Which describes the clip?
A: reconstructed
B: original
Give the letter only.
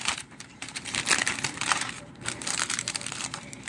A